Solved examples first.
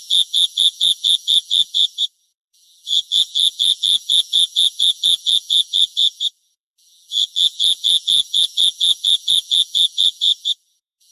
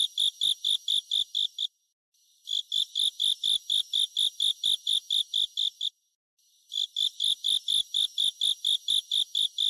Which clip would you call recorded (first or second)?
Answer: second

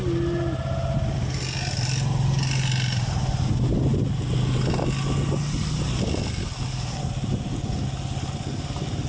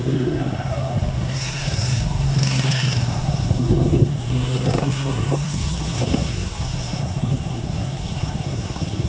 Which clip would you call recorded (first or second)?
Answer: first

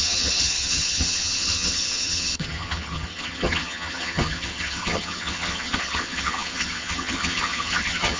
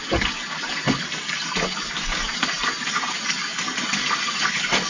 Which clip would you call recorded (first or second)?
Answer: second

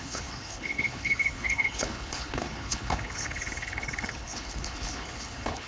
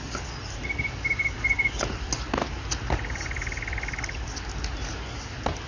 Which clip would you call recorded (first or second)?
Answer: second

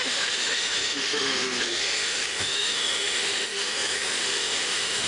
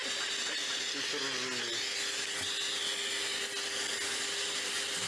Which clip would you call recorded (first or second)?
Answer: second